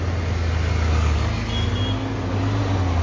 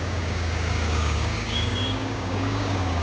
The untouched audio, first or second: first